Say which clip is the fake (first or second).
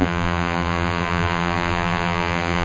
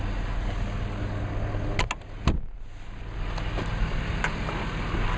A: first